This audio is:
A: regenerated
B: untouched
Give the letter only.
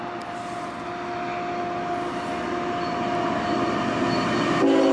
B